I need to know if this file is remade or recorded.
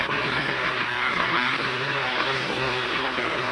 remade